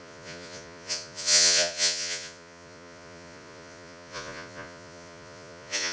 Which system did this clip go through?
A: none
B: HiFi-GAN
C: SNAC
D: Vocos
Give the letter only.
D